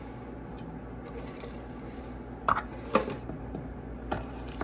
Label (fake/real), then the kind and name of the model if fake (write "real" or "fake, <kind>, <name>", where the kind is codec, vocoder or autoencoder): real